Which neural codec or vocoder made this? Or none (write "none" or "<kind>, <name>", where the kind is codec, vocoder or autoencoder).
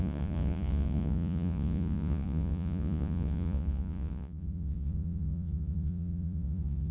vocoder, Vocos